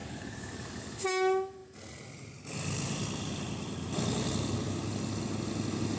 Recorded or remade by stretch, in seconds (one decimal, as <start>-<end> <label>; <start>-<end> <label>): 0.0-1.1 remade; 1.1-6.0 recorded